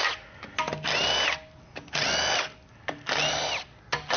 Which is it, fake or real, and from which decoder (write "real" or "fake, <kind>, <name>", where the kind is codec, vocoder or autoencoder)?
real